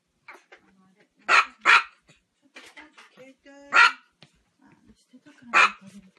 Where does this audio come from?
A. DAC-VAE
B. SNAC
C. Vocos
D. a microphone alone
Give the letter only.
D